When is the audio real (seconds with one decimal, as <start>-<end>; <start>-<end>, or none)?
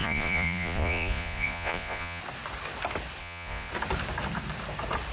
2.2-3.2; 3.7-5.1